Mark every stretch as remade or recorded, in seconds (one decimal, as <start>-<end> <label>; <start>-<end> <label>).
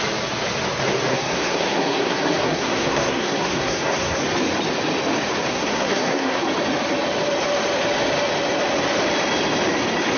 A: 0.0-1.1 recorded; 1.1-4.2 remade; 4.2-5.5 recorded; 5.5-6.4 remade; 6.4-10.2 recorded